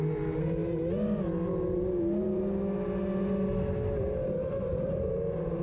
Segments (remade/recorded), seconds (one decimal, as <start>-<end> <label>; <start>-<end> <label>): 0.0-4.7 recorded; 4.7-5.6 remade

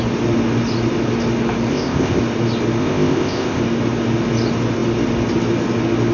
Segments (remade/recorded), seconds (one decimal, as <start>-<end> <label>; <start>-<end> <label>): 0.0-1.7 recorded; 1.7-2.2 remade; 2.2-2.8 recorded; 2.8-3.6 remade; 3.6-6.1 recorded

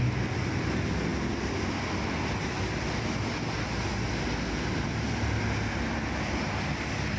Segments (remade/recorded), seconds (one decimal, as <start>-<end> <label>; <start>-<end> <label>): 0.0-7.2 recorded